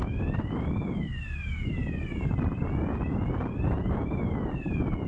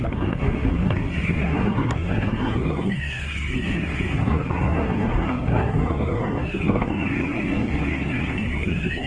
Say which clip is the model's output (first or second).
second